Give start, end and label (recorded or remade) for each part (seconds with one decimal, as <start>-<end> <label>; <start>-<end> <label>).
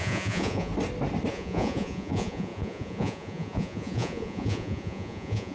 0.0-0.7 remade; 0.7-1.3 recorded; 1.3-5.5 remade